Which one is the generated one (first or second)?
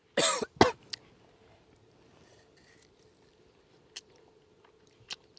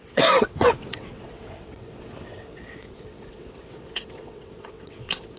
second